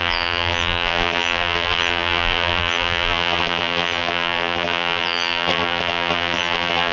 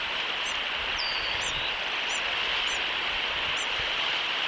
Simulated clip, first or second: first